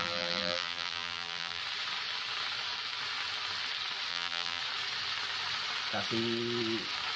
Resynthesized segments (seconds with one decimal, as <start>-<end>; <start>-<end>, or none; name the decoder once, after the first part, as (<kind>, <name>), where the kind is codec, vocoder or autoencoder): 0.0-1.6 (vocoder, BigVGAN v2); 4.1-4.6